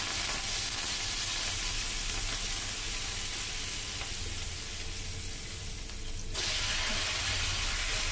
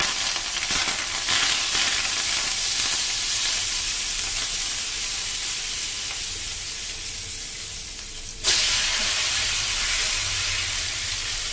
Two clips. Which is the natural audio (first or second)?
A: first